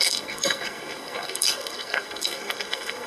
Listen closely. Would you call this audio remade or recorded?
remade